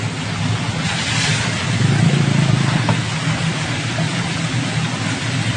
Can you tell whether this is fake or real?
real